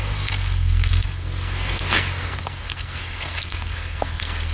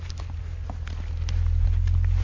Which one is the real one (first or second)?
second